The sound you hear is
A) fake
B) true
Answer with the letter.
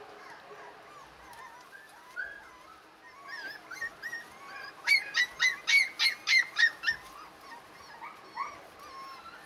B